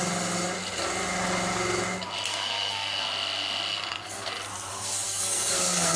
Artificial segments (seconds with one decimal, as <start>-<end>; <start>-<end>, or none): 2.3-3.0; 3.7-4.3; 4.7-6.0

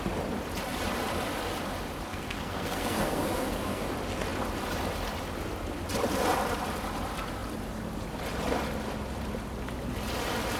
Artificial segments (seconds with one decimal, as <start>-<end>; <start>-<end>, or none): 2.1-3.9

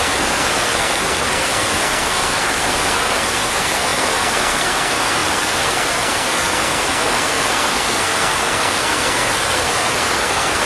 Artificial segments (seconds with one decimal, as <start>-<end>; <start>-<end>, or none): 0.0-10.7

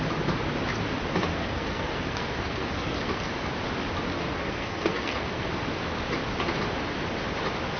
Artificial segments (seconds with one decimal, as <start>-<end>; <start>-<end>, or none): 1.3-3.3; 4.1-5.5